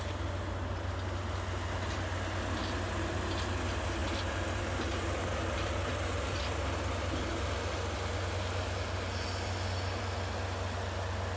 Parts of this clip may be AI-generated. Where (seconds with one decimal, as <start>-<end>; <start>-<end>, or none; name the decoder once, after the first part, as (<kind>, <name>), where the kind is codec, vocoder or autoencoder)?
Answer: none